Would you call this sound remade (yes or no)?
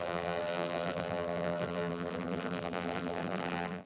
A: yes